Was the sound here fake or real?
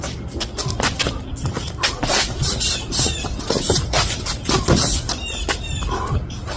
real